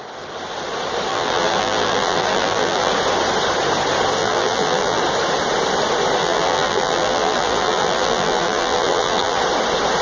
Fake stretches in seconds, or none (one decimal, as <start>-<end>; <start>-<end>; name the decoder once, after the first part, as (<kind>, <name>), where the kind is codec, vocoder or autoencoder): 1.1-2.9 (vocoder, BigVGAN v2); 4.2-5.0; 6.2-9.4

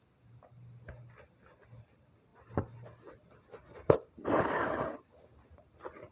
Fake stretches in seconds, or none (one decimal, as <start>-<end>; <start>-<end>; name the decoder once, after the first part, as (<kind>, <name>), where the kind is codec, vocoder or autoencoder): none

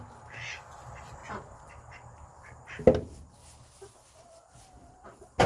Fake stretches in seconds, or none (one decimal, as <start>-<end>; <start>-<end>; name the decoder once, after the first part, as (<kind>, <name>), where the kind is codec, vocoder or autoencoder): 1.2-1.7 (vocoder, Vocos)

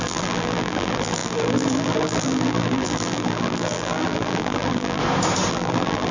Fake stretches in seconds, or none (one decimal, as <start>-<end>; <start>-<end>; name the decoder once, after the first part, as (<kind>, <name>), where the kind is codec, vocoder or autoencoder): 0.0-5.0 (vocoder, BigVGAN v2); 5.5-6.1

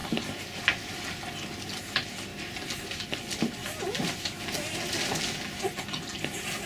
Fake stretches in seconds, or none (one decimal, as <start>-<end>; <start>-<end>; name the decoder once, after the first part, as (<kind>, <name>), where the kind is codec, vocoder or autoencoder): 0.0-0.6 (vocoder, BigVGAN v2); 3.6-5.1

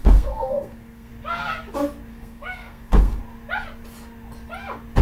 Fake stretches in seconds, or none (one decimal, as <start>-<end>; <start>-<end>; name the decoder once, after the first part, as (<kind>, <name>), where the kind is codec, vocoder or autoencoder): 0.0-1.1 (codec, SNAC); 2.1-3.2